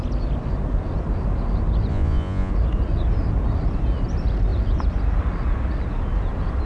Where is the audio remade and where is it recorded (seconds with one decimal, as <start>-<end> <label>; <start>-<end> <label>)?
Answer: 0.0-1.9 recorded; 1.9-2.5 remade; 2.5-6.7 recorded